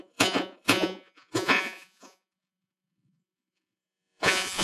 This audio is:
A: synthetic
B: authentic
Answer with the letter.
A